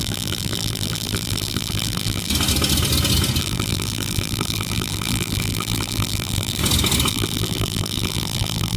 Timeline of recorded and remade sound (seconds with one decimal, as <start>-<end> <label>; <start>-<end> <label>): 0.0-2.3 remade; 2.3-3.4 recorded; 3.4-6.6 remade; 6.6-7.1 recorded; 7.1-8.8 remade